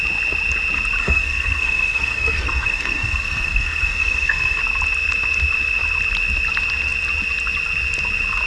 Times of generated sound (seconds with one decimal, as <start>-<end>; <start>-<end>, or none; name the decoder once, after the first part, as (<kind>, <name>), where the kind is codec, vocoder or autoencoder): 1.0-4.6 (codec, SNAC)